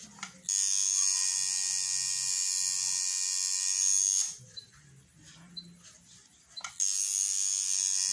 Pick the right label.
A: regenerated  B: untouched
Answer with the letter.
B